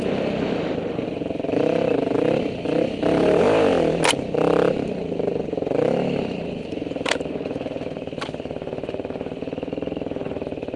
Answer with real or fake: real